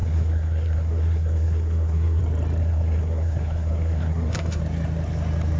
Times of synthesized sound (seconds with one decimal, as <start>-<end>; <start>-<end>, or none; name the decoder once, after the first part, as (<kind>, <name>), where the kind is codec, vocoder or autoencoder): 0.0-2.2 (codec, SNAC); 2.6-4.6